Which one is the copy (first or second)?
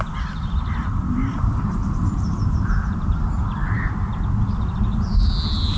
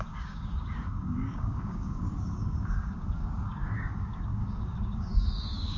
second